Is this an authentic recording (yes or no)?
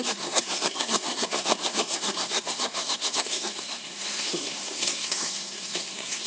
no